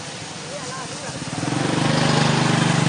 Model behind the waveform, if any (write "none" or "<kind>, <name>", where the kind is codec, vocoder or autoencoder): none